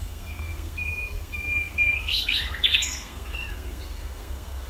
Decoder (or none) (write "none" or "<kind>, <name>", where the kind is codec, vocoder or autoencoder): codec, SNAC